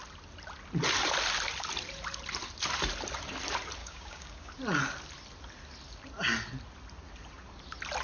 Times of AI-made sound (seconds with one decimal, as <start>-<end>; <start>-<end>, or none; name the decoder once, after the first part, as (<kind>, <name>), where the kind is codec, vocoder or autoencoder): 3.8-4.5 (codec, DAC)